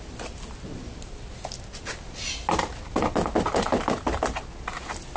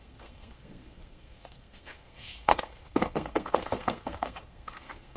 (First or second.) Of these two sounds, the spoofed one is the second